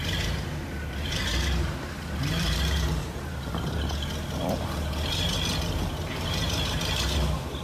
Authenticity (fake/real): fake